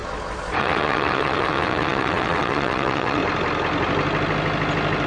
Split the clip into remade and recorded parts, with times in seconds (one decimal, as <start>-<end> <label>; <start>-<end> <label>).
0.0-0.6 recorded; 0.6-3.2 remade; 3.2-5.1 recorded